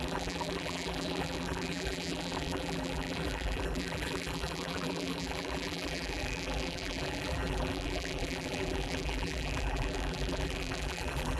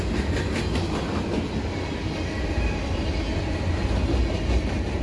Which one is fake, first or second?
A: first